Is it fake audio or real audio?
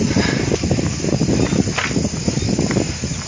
real